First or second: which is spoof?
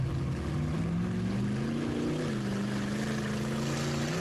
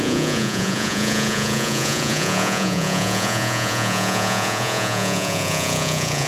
second